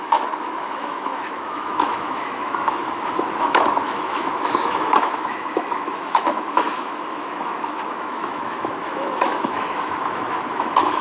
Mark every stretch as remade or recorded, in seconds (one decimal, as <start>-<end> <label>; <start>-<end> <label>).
0.0-11.0 remade